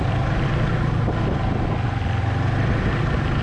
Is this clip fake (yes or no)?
no